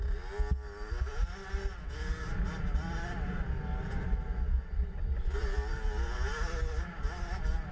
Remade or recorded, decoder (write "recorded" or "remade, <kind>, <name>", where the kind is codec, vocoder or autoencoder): recorded